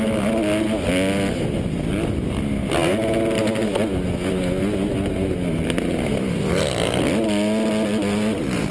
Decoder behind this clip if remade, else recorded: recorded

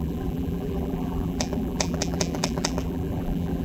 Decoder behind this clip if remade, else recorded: remade, vocoder, BigVGAN v2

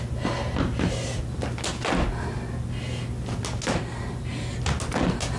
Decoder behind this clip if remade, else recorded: recorded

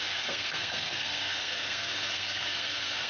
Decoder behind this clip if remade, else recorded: remade, codec, SNAC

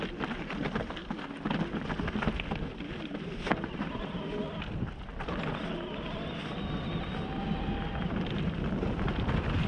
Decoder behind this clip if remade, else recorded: recorded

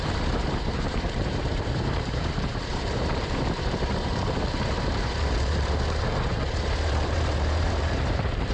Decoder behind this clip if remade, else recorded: remade, vocoder, BigVGAN v2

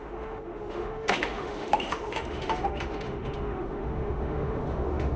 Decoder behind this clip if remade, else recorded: remade, autoencoder, DAC-VAE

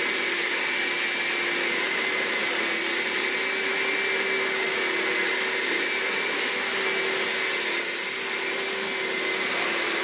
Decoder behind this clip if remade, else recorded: recorded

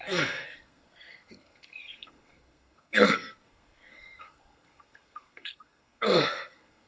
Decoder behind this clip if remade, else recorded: remade, codec, SNAC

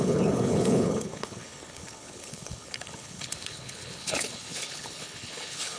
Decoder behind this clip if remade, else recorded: remade, codec, HILCodec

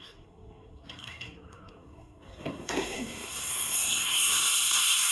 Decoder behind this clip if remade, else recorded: remade, codec, SNAC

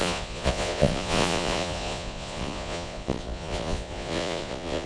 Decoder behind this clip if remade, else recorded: remade, vocoder, Vocos